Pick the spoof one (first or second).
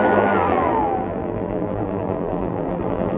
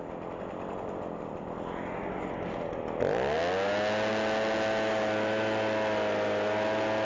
first